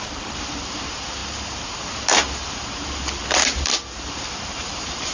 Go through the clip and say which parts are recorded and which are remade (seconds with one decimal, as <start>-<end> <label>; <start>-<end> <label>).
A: 0.0-5.1 remade